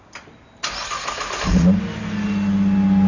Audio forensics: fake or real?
real